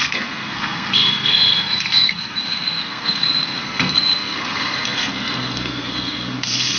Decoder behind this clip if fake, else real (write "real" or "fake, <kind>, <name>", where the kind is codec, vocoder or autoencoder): fake, codec, SNAC